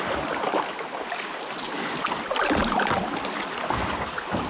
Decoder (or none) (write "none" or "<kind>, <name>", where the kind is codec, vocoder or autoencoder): vocoder, BigVGAN v2